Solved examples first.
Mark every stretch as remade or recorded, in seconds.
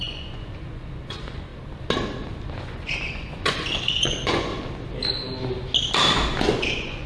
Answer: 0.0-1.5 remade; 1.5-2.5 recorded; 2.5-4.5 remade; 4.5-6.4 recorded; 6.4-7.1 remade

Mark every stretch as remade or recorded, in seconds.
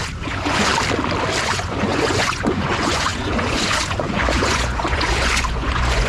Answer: 0.0-0.7 remade; 0.7-1.4 recorded; 1.4-6.1 remade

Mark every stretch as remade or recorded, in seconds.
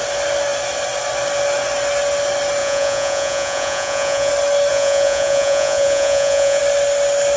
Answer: 0.0-2.6 recorded; 2.6-4.3 remade; 4.3-4.7 recorded; 4.7-6.6 remade; 6.6-7.4 recorded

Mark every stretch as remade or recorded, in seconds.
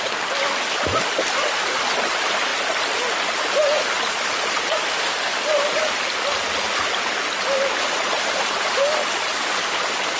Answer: 0.0-10.2 recorded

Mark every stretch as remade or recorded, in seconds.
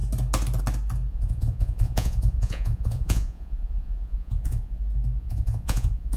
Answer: 0.0-1.1 recorded; 1.1-4.8 remade; 4.8-5.2 recorded; 5.2-6.2 remade